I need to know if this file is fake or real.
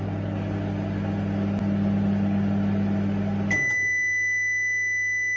real